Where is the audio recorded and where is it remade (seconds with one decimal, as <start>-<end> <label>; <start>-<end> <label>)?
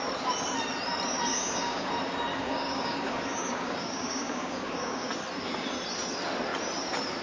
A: 0.0-1.3 recorded; 1.3-1.9 remade; 1.9-2.3 recorded; 2.3-5.1 remade; 5.1-7.2 recorded